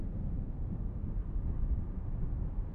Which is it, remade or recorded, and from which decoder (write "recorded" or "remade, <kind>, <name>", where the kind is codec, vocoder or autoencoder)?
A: remade, vocoder, BigVGAN v2